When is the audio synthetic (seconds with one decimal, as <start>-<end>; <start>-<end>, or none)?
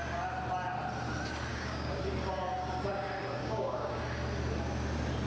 1.5-2.0; 3.4-4.0